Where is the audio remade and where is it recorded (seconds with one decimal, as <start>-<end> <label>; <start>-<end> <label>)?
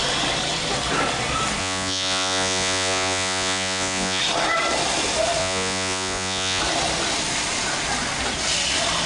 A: 0.0-1.6 recorded; 1.6-4.2 remade; 4.2-5.4 recorded; 5.4-6.6 remade; 6.6-9.1 recorded